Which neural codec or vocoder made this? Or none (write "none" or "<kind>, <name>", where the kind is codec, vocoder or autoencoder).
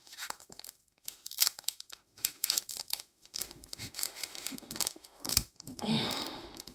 autoencoder, DAC-VAE